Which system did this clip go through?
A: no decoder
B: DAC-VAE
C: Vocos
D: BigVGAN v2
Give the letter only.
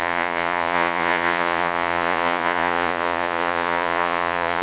C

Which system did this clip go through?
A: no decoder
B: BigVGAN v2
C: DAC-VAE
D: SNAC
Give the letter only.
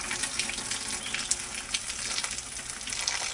A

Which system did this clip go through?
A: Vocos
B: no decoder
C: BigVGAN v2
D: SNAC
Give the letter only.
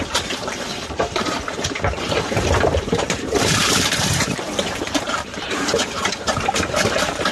C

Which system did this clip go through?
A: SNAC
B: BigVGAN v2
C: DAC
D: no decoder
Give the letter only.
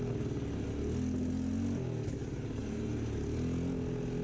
D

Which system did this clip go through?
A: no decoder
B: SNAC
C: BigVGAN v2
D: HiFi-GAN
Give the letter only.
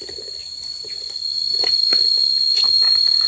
C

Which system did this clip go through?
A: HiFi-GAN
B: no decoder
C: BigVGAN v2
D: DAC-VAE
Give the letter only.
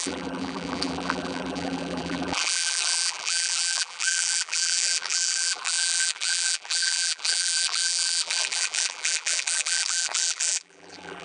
C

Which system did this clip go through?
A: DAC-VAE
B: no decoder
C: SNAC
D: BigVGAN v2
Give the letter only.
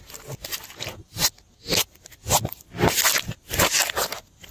B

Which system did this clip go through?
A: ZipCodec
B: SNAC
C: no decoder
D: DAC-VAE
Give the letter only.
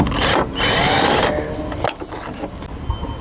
C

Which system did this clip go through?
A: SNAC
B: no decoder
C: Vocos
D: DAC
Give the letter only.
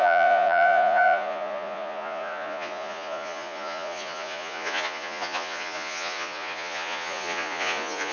C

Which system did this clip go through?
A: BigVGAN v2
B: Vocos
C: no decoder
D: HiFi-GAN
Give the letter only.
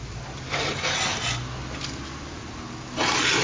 A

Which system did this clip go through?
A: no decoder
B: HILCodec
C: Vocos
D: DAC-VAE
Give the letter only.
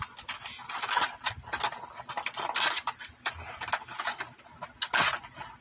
A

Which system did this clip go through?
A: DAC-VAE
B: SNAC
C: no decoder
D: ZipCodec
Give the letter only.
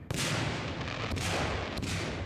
C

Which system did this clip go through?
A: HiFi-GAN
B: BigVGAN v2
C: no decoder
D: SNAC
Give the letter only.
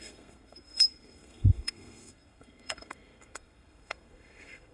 D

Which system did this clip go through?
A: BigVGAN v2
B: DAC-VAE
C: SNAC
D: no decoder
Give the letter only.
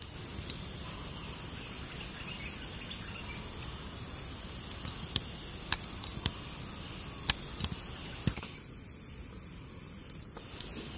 D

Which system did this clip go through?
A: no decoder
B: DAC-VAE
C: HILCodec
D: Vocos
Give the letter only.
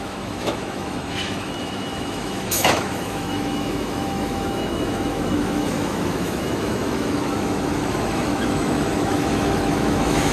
B